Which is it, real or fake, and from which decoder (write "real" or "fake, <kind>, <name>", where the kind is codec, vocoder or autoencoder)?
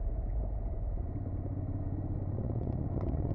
fake, vocoder, Vocos